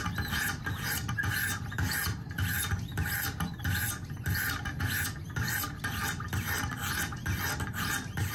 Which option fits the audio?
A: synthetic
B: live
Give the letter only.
B